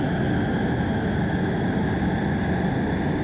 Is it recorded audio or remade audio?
recorded